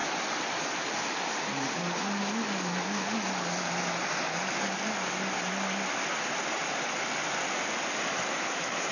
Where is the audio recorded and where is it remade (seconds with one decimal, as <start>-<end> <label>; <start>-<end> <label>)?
0.0-8.9 recorded